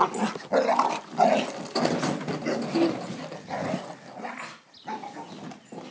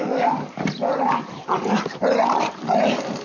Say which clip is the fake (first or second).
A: second